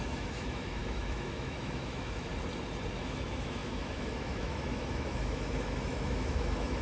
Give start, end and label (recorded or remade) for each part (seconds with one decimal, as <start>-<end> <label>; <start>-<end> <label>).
0.0-2.3 remade; 2.3-2.9 recorded; 2.9-6.8 remade